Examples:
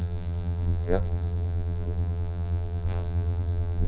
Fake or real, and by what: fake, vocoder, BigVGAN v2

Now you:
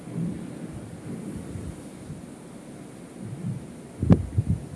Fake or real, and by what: real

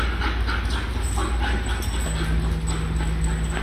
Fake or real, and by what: real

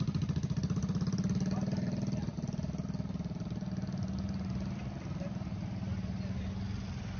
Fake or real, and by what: real